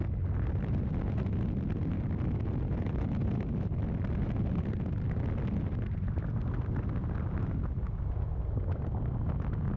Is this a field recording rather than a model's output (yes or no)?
yes